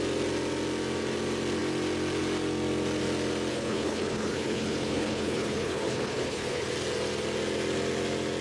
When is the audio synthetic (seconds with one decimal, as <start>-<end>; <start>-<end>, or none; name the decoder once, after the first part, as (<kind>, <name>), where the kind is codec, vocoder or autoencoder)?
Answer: 3.5-6.7 (codec, HILCodec)